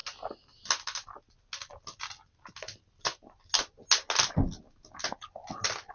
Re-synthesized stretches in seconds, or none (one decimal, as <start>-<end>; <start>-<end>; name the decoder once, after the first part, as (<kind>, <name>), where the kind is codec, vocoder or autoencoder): none